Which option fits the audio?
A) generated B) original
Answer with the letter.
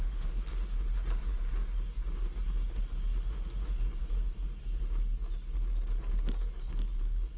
B